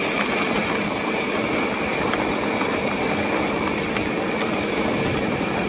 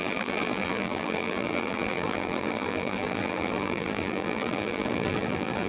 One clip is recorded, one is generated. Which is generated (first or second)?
second